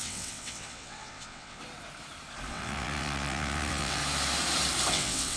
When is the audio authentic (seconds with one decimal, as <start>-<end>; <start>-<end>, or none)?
1.6-2.5; 4.0-4.9